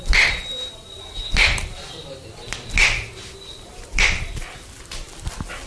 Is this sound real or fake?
real